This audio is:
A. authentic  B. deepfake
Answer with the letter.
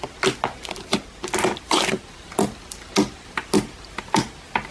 A